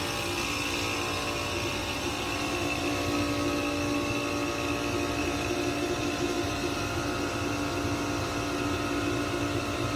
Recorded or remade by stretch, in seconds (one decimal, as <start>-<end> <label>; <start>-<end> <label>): 0.0-1.8 recorded; 1.8-2.8 remade; 2.8-5.2 recorded; 5.2-6.8 remade; 6.8-10.0 recorded